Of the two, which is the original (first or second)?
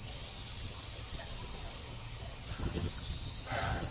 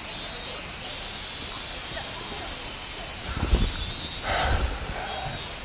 second